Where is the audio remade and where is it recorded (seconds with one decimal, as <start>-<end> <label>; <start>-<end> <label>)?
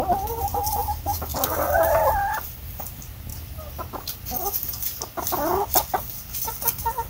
0.0-7.1 recorded